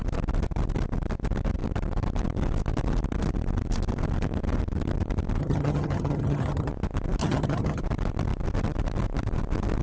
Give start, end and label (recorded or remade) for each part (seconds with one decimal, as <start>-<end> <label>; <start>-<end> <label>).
0.0-5.4 recorded; 5.4-6.7 remade; 6.7-7.2 recorded; 7.2-7.8 remade; 7.8-9.8 recorded

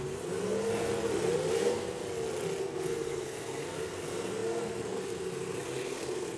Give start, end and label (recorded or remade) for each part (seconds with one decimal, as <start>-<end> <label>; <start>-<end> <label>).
0.0-0.9 remade; 0.9-1.5 recorded; 1.5-2.0 remade; 2.0-2.6 recorded; 2.6-6.4 remade

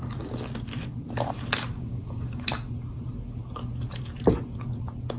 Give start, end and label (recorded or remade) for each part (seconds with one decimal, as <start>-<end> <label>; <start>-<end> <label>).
0.0-1.7 recorded; 1.7-2.7 remade; 2.7-5.2 recorded